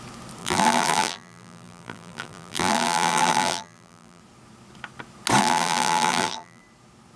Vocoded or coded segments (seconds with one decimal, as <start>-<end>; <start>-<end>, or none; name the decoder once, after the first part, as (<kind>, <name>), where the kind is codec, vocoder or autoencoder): 0.4-4.2 (vocoder, BigVGAN v2); 5.4-6.6